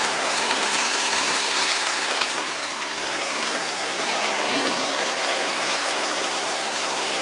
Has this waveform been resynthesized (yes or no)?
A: yes